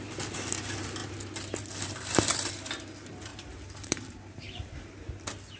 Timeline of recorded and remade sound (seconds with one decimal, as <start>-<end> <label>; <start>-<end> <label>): 0.0-3.3 recorded; 3.3-4.9 remade; 4.9-5.6 recorded